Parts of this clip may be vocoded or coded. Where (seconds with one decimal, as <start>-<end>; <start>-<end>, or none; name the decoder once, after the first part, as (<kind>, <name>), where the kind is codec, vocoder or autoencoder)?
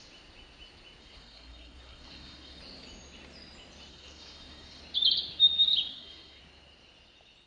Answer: 1.0-2.6 (codec, SNAC); 3.9-4.8; 5.9-6.4